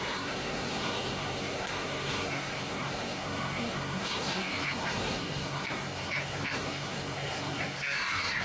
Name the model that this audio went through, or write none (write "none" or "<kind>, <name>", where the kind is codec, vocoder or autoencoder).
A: codec, SNAC